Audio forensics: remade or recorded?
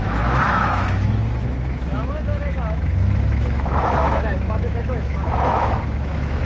remade